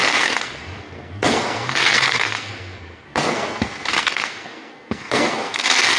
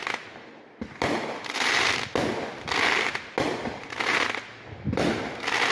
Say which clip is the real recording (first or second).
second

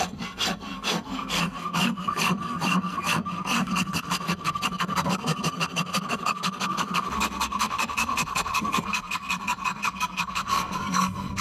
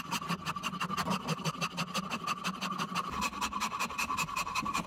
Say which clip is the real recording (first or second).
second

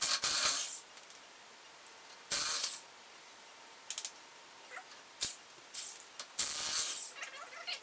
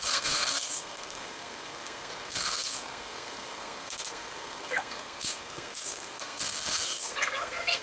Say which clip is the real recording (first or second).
first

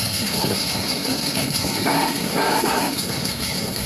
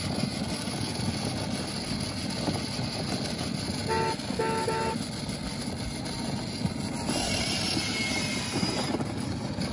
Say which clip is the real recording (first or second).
second